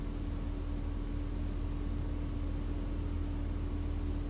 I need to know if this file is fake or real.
real